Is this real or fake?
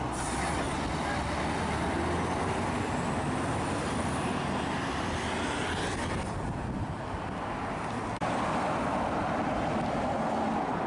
real